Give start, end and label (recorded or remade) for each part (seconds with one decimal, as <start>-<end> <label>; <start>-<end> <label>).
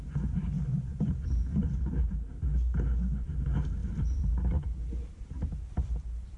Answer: 0.0-0.9 recorded; 0.9-2.1 remade; 2.1-3.8 recorded; 3.8-6.4 remade